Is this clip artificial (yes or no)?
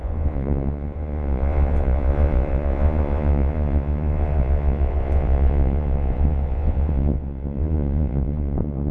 yes